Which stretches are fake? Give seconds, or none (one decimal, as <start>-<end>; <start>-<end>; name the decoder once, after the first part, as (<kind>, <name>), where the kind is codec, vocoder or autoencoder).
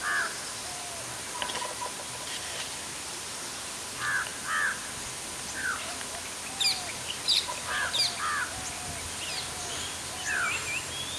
none